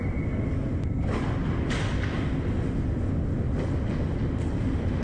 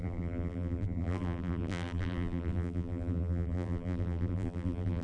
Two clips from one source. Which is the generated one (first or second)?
second